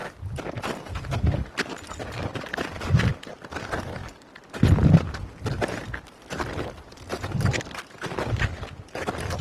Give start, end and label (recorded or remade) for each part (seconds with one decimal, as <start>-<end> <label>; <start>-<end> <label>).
0.0-1.1 remade; 1.1-4.0 recorded; 4.0-5.5 remade; 5.5-9.4 recorded